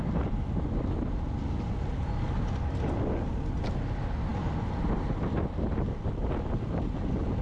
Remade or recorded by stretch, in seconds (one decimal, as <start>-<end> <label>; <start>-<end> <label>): 0.0-7.4 recorded